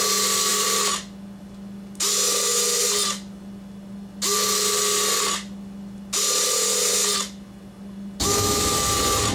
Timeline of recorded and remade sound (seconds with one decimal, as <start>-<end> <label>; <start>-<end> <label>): 0.0-9.3 recorded